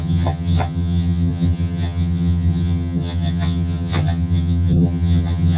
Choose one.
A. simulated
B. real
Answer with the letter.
A